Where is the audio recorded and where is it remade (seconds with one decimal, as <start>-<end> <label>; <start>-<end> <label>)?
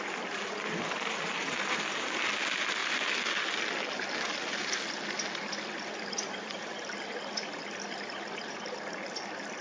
0.0-9.6 recorded